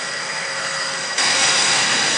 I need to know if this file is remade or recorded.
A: remade